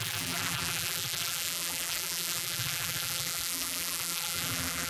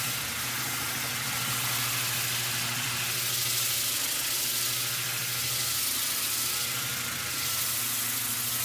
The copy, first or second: first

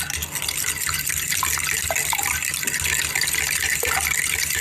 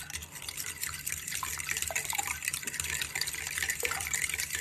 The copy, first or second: second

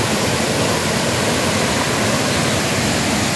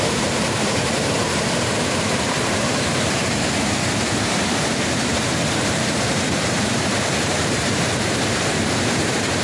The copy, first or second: second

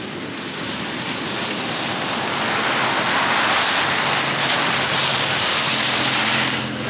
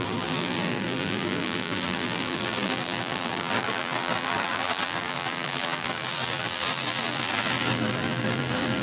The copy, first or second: second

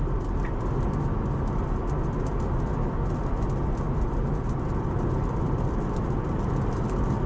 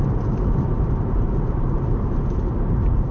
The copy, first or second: second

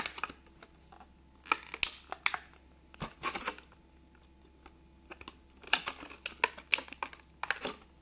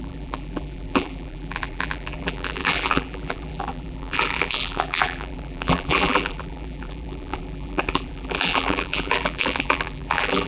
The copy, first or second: second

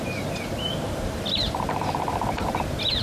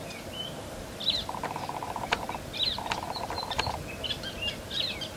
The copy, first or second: first